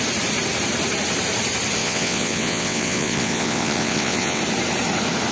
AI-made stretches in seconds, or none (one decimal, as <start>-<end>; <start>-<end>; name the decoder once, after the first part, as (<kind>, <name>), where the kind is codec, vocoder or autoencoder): 1.8-4.4 (vocoder, WaveNeXt)